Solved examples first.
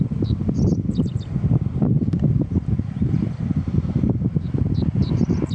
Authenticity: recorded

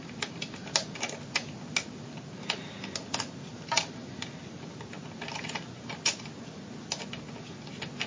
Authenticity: recorded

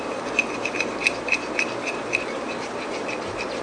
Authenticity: recorded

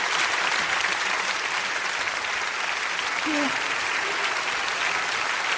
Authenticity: recorded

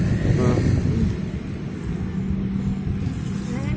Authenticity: recorded